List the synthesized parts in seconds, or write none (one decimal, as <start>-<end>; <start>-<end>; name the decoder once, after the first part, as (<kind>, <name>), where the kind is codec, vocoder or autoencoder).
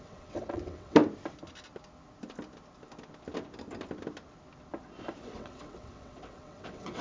0.0-1.0 (vocoder, WaveNeXt); 5.2-7.0